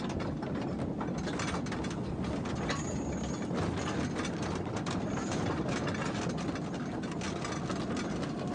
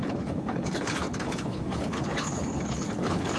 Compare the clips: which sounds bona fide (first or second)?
first